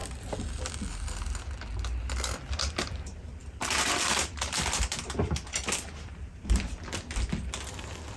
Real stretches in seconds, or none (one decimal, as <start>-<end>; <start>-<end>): 0.0-8.2